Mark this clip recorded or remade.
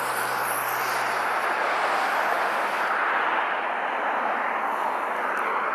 recorded